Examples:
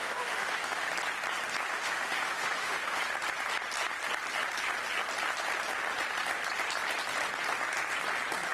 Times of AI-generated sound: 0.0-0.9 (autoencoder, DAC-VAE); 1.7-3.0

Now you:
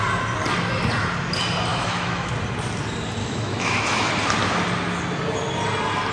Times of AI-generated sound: 1.7-2.3 (autoencoder, DAC-VAE); 3.2-4.1

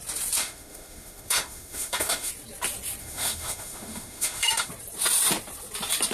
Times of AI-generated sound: 0.4-2.3 (autoencoder, DAC-VAE); 3.0-4.7

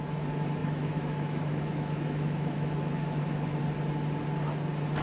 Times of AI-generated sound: 0.6-3.6 (autoencoder, DAC-VAE)

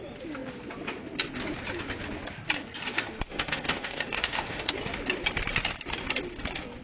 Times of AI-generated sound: 3.3-4.7 (autoencoder, DAC-VAE)